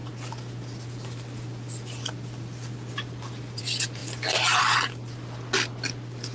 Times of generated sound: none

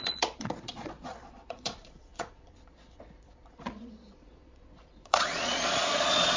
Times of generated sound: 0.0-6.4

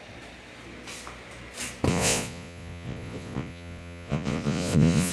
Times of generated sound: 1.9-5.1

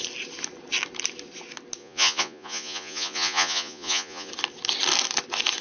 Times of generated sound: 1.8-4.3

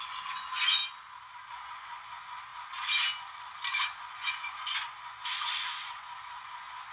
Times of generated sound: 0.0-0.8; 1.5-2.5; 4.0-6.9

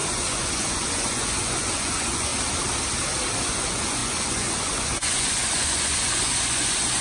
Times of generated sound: 0.0-2.3; 3.4-7.0

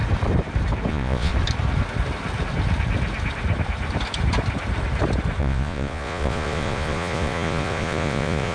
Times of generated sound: 0.9-1.3; 5.4-8.5